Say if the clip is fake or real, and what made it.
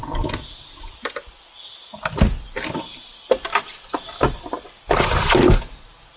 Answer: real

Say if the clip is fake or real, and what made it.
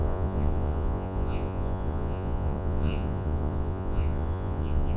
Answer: fake, vocoder, Vocos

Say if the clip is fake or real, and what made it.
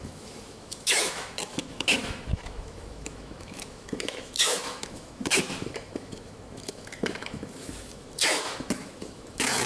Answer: fake, autoencoder, DAC-VAE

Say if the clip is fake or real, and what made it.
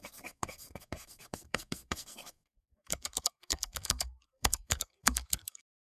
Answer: fake, codec, SNAC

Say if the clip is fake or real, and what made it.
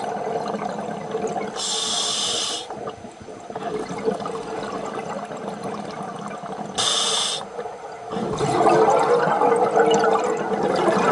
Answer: real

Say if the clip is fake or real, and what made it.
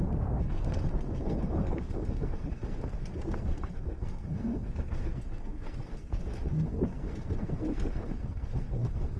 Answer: fake, codec, SNAC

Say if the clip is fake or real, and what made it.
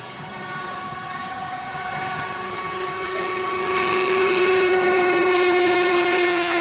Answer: fake, vocoder, HiFi-GAN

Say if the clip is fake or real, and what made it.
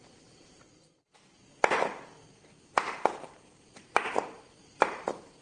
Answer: fake, vocoder, BigVGAN v2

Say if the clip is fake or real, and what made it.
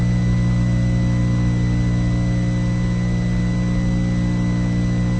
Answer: real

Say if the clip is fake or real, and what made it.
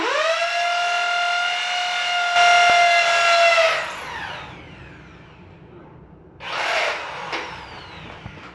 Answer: real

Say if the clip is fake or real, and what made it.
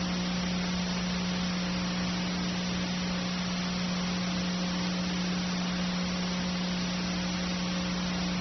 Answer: real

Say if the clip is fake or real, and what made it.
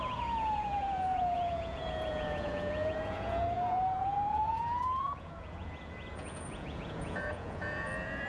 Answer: fake, vocoder, Vocos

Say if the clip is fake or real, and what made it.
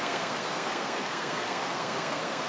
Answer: fake, codec, SNAC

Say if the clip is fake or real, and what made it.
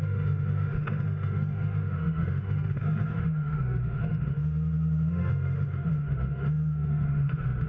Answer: fake, autoencoder, DAC-VAE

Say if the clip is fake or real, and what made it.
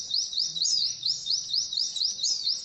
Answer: fake, vocoder, Vocos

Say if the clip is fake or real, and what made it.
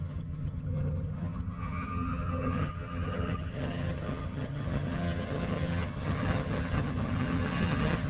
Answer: fake, vocoder, HiFi-GAN